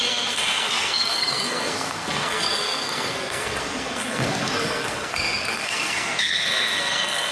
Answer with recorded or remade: remade